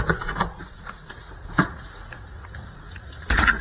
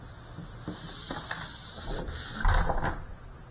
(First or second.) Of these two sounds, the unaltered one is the second